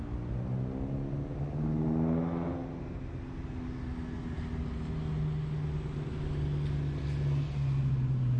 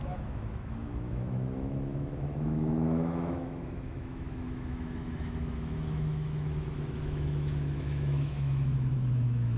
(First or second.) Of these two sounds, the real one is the first